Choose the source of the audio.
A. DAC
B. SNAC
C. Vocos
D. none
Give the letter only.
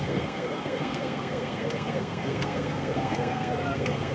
B